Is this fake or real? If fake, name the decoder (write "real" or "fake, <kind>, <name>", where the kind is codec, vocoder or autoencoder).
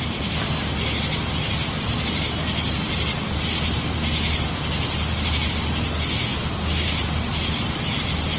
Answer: real